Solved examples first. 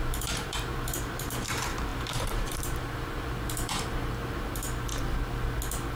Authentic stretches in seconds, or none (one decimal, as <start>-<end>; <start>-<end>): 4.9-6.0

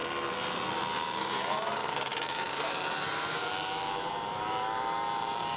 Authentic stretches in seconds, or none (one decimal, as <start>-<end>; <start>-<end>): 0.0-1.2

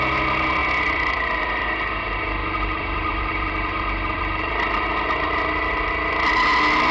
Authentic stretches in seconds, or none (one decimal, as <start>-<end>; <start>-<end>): 0.0-0.6; 1.4-2.4; 4.7-6.9

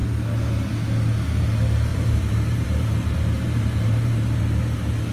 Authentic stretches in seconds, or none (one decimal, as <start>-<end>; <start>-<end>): 0.0-1.9; 4.4-5.1

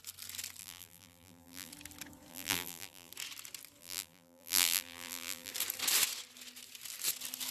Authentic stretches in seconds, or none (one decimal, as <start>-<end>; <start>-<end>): 0.0-0.6; 1.7-2.3; 3.1-3.8; 5.5-7.5